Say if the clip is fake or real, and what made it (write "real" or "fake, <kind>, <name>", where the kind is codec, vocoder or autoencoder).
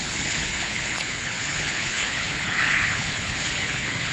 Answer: fake, codec, HILCodec